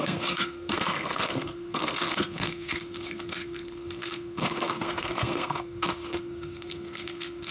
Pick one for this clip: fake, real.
fake